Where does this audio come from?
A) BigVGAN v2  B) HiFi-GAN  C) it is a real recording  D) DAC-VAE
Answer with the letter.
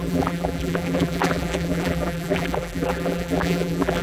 A